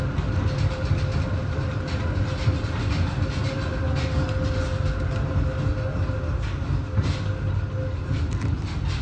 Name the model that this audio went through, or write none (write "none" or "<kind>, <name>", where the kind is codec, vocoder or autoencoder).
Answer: none